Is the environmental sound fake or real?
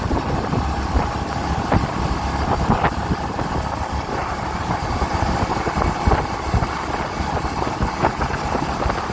real